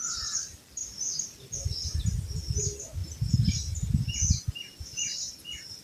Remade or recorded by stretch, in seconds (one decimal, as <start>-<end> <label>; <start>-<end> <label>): 0.0-5.8 recorded

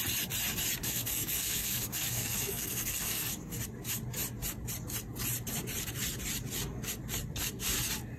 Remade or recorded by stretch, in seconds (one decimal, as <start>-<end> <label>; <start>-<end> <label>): 0.0-0.8 recorded; 0.8-3.6 remade; 3.6-8.2 recorded